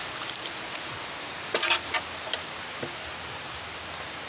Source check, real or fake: real